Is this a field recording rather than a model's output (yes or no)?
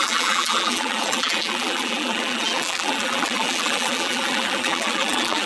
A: no